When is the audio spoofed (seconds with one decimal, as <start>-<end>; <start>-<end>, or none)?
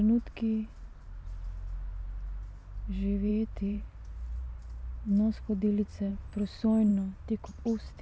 3.3-6.1; 6.9-7.5